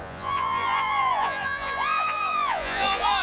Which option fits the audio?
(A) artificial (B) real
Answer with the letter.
A